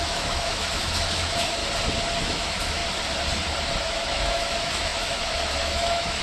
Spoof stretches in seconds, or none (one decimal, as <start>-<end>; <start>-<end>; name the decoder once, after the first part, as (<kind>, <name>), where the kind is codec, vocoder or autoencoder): 0.0-1.6 (autoencoder, DAC-VAE); 2.2-2.8; 3.8-6.2